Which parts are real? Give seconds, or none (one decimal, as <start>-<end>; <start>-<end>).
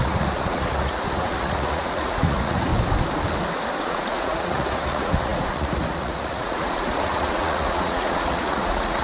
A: 2.7-3.8